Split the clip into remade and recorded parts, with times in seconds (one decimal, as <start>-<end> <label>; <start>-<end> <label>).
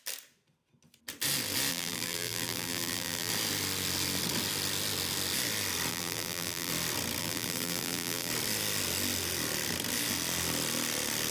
0.0-1.7 recorded; 1.7-3.3 remade; 3.3-5.9 recorded; 5.9-6.7 remade; 6.7-7.2 recorded; 7.2-8.3 remade; 8.3-11.3 recorded